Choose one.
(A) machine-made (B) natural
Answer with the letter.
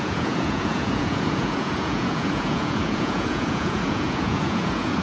A